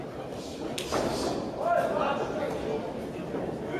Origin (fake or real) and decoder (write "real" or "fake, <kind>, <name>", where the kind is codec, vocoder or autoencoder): real